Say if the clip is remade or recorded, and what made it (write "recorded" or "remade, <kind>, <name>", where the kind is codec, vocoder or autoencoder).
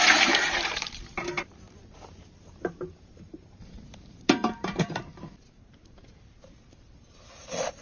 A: remade, vocoder, BigVGAN v2